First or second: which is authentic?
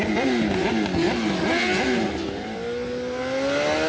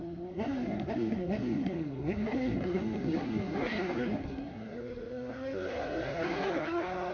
first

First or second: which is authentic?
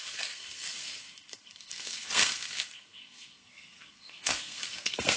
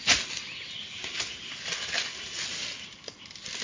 second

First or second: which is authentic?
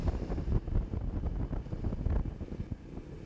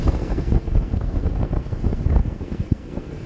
first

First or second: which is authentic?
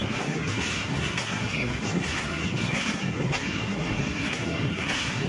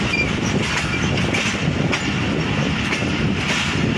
second